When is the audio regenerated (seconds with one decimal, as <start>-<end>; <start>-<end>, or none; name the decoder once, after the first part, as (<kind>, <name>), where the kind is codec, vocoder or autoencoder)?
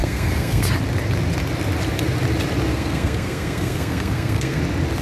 0.0-0.7 (codec, SNAC); 2.7-4.6